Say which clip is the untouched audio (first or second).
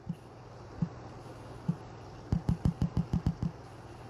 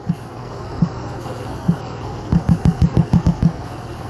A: first